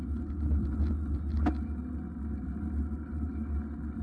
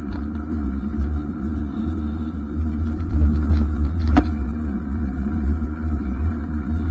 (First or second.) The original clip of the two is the first